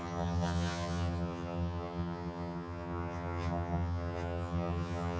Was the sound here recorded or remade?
remade